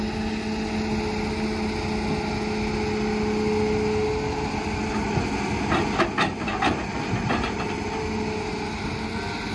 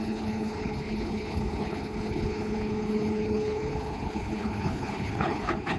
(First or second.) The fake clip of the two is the second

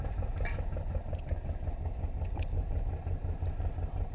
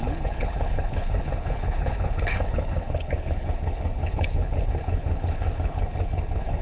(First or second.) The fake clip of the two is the second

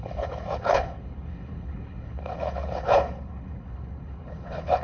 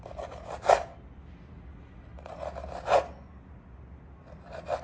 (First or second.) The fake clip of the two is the first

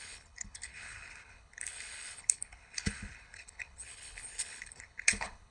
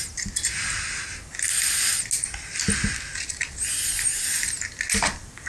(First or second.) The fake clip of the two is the first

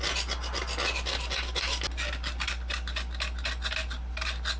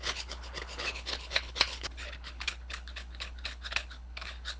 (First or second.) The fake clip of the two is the second